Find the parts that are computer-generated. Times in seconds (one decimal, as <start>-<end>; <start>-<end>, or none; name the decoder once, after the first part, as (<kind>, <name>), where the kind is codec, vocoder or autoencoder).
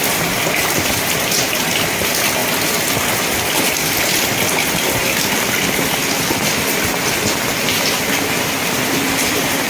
none